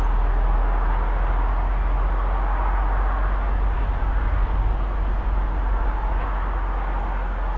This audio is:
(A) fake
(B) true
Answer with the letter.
B